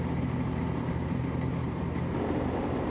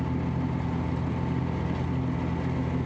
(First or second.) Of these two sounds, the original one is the second